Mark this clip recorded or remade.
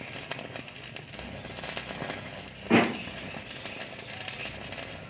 recorded